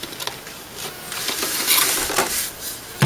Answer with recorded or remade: recorded